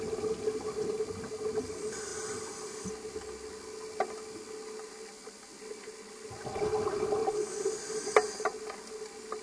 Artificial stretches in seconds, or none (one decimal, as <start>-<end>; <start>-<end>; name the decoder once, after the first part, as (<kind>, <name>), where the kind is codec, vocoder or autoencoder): none